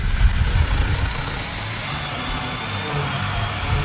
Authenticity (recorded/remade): recorded